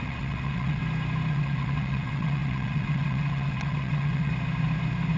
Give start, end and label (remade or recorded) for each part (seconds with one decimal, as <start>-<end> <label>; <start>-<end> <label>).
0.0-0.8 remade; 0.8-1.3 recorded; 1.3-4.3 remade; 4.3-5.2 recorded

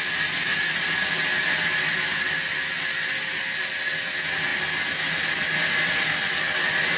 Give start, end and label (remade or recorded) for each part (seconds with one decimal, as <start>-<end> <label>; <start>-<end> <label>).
0.0-7.0 recorded

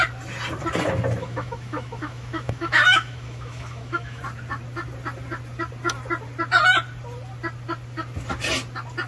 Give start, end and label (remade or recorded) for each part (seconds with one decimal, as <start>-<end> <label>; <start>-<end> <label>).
0.0-1.2 recorded; 1.2-4.2 remade; 4.2-9.1 recorded

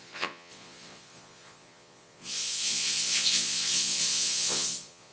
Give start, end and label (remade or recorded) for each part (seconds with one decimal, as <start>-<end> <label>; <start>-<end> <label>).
0.0-5.1 remade